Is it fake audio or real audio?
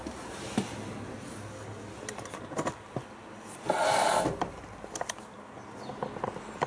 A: real